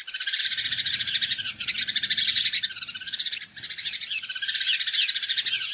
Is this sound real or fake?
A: fake